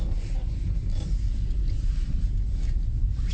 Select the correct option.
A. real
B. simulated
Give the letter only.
A